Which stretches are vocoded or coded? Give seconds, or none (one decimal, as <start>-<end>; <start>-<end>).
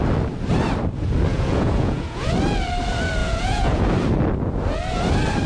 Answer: 1.3-2.3; 3.2-3.8